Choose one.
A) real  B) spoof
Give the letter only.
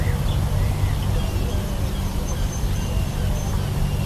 A